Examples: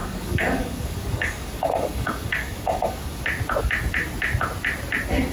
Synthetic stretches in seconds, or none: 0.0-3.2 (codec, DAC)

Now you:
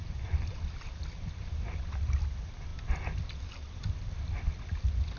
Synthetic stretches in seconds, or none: none

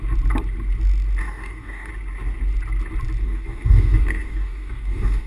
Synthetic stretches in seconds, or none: 1.2-1.9 (codec, DAC); 3.2-5.3